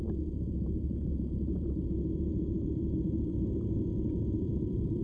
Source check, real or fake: fake